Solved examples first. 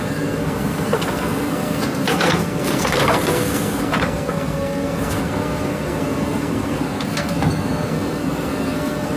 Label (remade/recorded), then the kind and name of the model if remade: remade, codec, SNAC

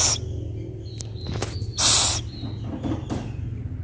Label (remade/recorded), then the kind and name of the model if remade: recorded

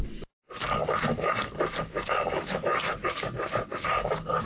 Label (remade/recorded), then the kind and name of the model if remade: recorded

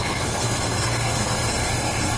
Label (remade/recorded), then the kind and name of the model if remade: remade, codec, SNAC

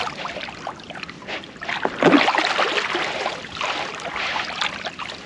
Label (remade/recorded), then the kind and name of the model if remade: recorded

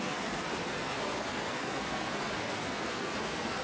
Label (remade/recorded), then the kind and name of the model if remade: remade, codec, SNAC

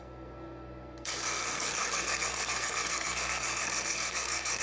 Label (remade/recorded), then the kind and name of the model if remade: remade, codec, SNAC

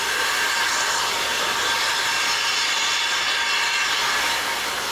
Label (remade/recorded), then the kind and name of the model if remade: recorded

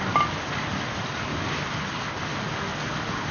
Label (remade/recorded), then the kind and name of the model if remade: recorded